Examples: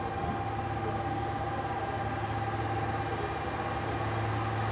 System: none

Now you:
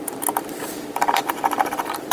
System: vocoder, BigVGAN v2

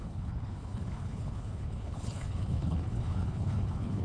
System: codec, HILCodec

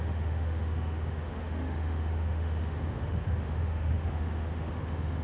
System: autoencoder, DAC-VAE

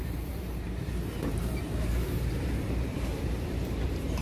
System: vocoder, BigVGAN v2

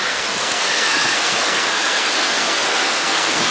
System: codec, SNAC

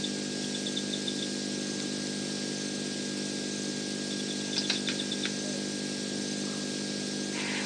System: none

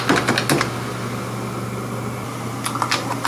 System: none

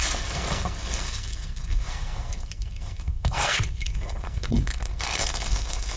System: codec, SNAC